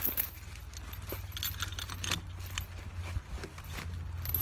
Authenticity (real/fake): real